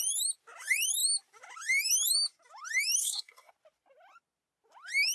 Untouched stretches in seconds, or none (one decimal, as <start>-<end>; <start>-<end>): 0.0-3.0; 3.5-5.1